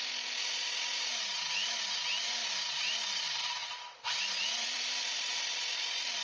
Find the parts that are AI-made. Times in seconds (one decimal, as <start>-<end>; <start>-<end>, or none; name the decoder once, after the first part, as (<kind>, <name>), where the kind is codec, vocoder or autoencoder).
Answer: 0.0-1.5 (vocoder, BigVGAN v2); 2.4-6.2